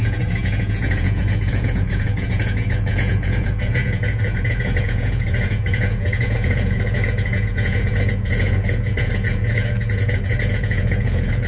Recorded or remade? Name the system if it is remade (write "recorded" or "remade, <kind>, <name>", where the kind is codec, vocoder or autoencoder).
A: remade, vocoder, Vocos